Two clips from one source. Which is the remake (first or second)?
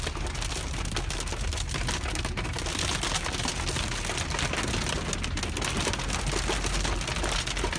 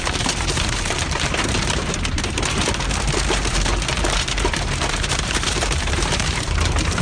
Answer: second